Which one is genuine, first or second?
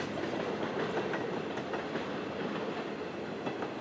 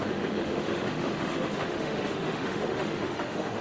first